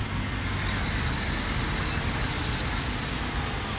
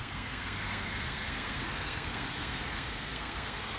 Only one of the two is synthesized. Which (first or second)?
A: second